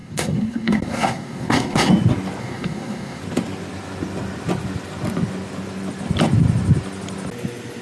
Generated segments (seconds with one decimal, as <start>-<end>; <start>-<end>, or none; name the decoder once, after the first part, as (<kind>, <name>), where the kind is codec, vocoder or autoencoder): 0.0-1.9 (codec, SNAC); 2.4-3.2